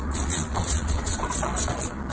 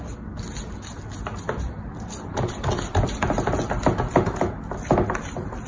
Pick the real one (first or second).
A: second